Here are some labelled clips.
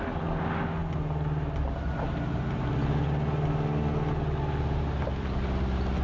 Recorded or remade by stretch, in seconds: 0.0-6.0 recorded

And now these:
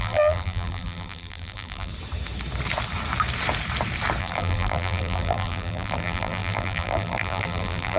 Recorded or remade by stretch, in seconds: 0.0-1.9 remade; 1.9-4.2 recorded; 4.2-8.0 remade

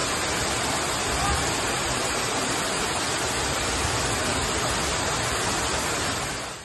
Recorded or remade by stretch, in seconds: 0.0-6.6 recorded

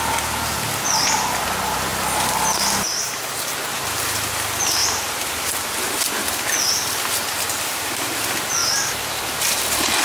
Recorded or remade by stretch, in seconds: 0.0-4.8 recorded; 4.8-5.5 remade; 5.5-8.6 recorded; 8.6-10.0 remade

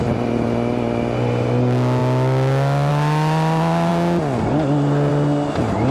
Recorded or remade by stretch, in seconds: 0.0-5.9 recorded